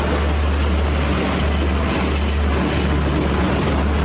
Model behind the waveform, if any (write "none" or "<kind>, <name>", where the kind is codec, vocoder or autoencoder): none